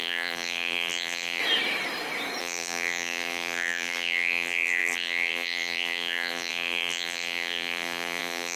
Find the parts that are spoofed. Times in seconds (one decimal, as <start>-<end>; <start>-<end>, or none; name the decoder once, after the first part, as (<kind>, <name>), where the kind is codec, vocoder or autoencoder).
0.0-1.4 (vocoder, BigVGAN v2); 2.4-8.6